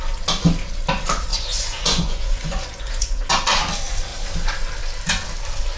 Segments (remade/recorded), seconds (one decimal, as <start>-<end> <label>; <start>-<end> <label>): 0.0-1.3 recorded; 1.3-3.3 remade; 3.3-5.8 recorded

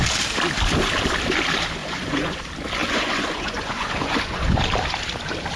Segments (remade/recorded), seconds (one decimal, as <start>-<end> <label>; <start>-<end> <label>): 0.0-1.8 recorded; 1.8-2.4 remade; 2.4-2.8 recorded; 2.8-4.6 remade; 4.6-5.6 recorded

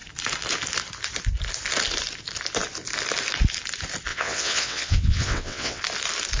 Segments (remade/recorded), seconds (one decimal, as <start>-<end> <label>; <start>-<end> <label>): 0.0-4.1 recorded; 4.1-5.8 remade; 5.8-6.4 recorded

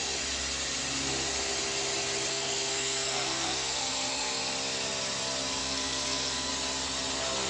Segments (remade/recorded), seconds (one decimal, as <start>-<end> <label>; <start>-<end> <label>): 0.0-2.3 recorded; 2.3-4.4 remade; 4.4-5.6 recorded; 5.6-6.5 remade; 6.5-7.5 recorded

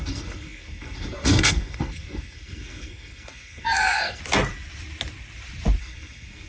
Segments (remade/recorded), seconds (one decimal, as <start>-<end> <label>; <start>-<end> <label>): 0.0-4.2 remade; 4.2-5.8 recorded; 5.8-6.5 remade

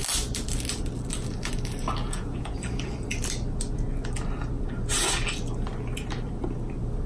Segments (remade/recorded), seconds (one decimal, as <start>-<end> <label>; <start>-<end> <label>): 0.0-2.0 recorded; 2.0-2.6 remade; 2.6-7.1 recorded